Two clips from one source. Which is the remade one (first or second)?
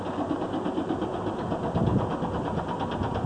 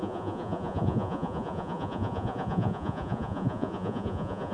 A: second